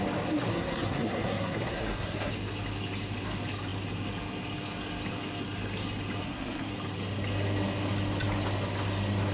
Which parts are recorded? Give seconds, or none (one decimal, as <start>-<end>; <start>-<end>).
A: 0.0-0.5; 2.3-6.2; 6.7-9.3